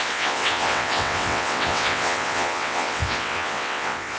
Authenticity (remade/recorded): remade